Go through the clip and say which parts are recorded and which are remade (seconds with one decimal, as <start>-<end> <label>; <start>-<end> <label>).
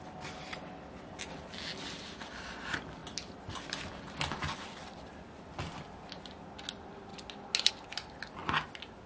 0.0-9.1 recorded